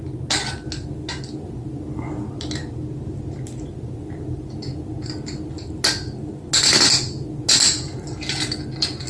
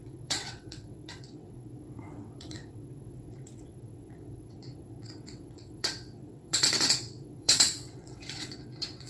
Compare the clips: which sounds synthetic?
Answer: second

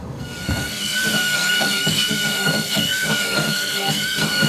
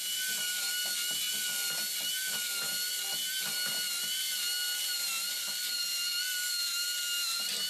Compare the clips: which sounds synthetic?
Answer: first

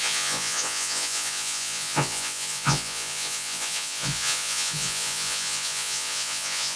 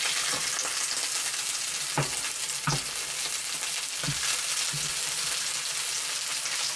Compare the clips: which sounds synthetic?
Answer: first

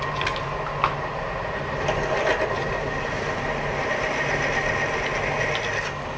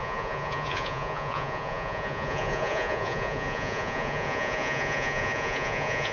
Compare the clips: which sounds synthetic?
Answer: second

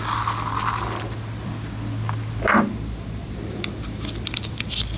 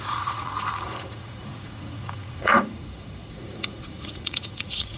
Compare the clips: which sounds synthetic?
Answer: second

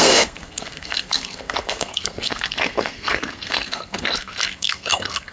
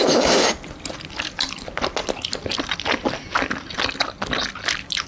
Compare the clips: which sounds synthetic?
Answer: first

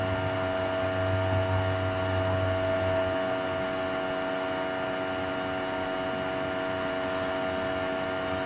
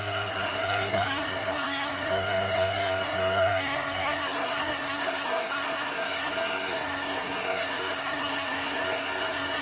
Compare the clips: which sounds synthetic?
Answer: second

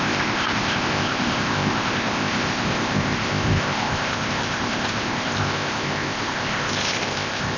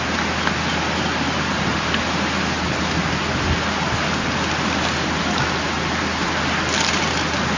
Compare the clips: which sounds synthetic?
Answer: first